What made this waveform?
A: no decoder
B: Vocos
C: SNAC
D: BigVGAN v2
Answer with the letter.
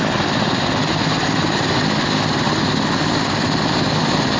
A